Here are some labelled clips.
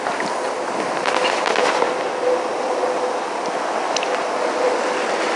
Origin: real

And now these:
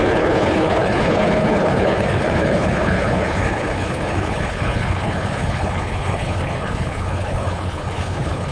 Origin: fake